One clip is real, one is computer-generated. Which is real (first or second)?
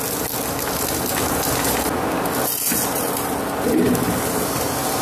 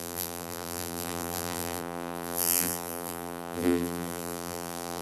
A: first